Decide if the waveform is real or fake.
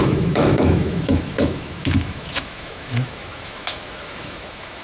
fake